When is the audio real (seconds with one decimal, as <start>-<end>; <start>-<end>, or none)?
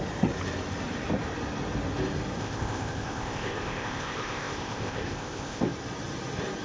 0.0-2.4; 5.6-6.6